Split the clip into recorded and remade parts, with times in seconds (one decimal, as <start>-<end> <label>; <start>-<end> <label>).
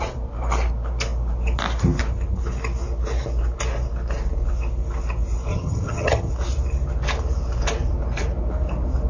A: 0.0-5.5 recorded; 5.5-6.3 remade; 6.3-9.1 recorded